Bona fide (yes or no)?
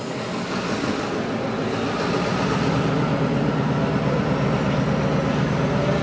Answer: yes